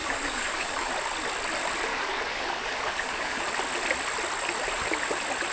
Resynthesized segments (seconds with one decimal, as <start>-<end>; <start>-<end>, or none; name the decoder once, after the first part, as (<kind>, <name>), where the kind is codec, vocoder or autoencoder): 0.0-0.9 (codec, DAC); 1.9-3.4